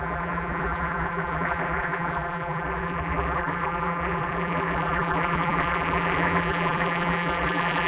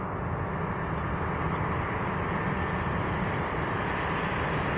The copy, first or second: first